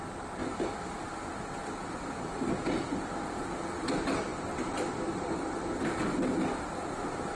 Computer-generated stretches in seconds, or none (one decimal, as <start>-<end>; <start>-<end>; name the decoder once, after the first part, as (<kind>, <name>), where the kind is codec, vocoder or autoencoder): 0.4-1.2 (vocoder, BigVGAN v2); 2.8-3.4; 4.3-5.4